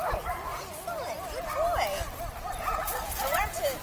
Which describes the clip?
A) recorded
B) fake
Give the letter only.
A